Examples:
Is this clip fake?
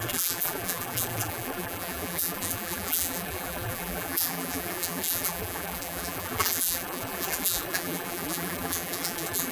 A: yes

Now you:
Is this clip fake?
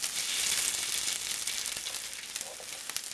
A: no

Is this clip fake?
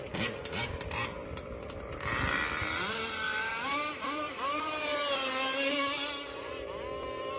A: no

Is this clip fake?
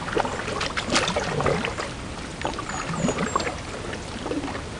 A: no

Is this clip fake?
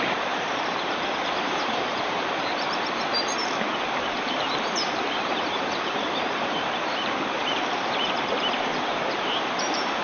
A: yes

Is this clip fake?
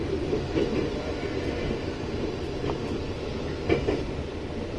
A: no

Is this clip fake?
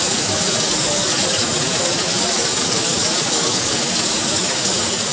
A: yes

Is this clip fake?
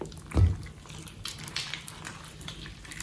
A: no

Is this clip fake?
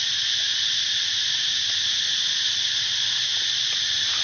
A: no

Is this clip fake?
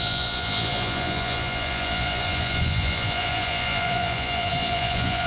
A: yes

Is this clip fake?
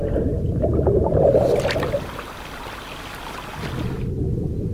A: no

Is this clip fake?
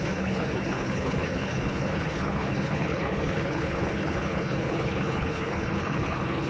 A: yes